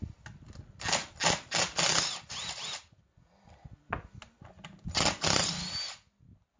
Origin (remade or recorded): recorded